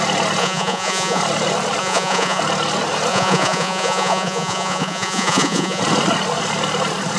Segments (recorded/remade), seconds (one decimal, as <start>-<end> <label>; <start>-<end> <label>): 0.0-0.4 recorded; 0.4-1.2 remade; 1.2-1.8 recorded; 1.8-2.4 remade; 2.4-3.1 recorded; 3.1-5.8 remade; 5.8-7.2 recorded